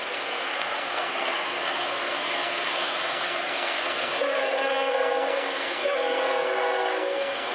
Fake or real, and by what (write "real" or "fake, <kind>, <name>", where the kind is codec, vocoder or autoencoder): fake, codec, SNAC